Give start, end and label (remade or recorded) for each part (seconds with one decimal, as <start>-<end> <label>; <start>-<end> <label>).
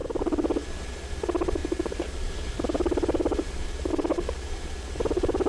0.0-0.9 recorded; 0.9-5.5 remade